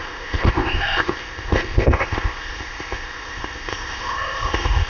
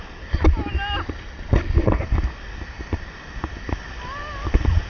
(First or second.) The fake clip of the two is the first